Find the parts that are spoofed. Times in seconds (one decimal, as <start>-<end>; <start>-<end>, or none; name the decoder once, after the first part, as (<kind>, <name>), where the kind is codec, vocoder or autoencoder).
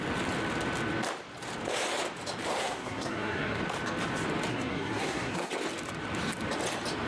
2.6-3.6 (codec, SNAC); 4.5-5.5